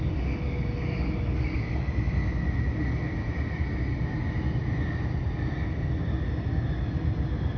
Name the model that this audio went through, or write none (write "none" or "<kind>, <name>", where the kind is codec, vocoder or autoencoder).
none